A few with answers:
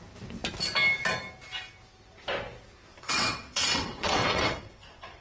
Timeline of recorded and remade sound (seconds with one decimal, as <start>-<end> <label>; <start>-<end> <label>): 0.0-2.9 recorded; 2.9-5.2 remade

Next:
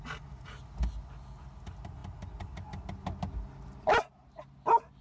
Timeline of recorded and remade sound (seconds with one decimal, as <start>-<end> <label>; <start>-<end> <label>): 0.0-5.0 recorded

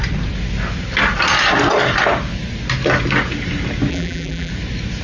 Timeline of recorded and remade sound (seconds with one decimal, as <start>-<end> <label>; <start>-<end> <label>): 0.0-3.9 recorded; 3.9-4.5 remade; 4.5-5.0 recorded

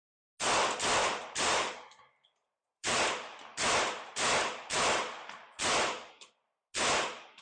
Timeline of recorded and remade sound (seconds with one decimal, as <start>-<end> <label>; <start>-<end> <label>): 0.0-1.0 recorded; 1.0-3.0 remade; 3.0-7.4 recorded